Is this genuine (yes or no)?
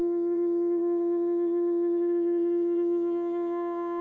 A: no